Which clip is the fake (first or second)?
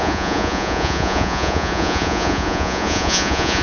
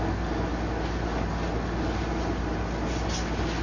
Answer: first